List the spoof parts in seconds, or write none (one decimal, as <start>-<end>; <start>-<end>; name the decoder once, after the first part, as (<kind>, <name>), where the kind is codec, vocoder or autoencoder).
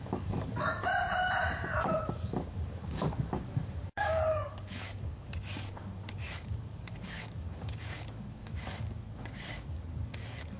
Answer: 0.0-0.9 (codec, DAC); 2.1-10.6